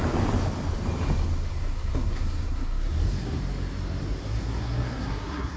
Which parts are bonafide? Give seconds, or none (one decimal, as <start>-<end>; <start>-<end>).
0.0-1.5; 3.4-4.2